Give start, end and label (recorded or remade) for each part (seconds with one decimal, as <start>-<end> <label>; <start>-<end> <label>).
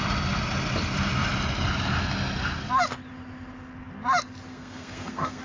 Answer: 0.0-4.5 recorded; 4.5-5.4 remade